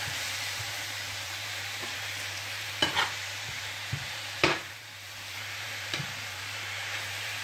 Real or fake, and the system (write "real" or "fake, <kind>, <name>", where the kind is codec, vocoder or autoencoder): fake, vocoder, BigVGAN v2